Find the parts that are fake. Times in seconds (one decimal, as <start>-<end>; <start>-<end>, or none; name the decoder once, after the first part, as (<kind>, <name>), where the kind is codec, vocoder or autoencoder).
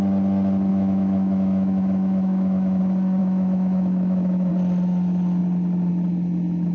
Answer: 0.7-2.8 (autoencoder, DAC-VAE); 3.2-4.5